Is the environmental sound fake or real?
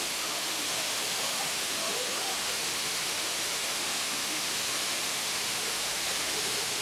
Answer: fake